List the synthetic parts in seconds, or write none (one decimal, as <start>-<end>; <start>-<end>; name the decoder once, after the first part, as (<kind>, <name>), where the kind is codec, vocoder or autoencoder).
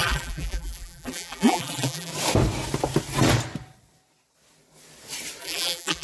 0.0-2.1 (vocoder, BigVGAN v2); 5.4-6.0